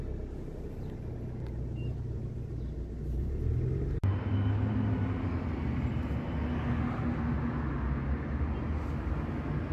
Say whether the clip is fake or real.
real